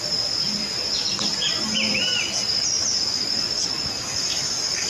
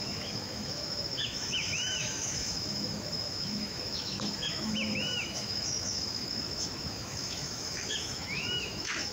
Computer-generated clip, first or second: second